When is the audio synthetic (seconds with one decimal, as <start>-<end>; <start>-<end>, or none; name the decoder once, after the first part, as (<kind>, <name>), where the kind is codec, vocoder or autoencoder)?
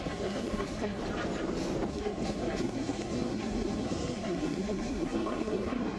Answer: 0.0-1.0 (codec, SNAC); 1.9-6.0